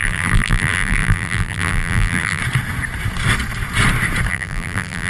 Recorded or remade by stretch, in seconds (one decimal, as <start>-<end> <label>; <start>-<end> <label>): 0.0-2.4 remade; 2.4-4.3 recorded; 4.3-5.1 remade